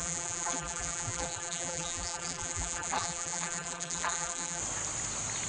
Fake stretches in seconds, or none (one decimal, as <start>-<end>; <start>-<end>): 0.0-4.6